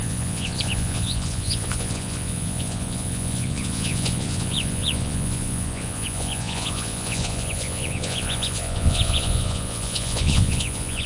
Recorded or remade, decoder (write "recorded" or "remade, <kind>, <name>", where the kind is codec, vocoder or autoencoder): remade, vocoder, Vocos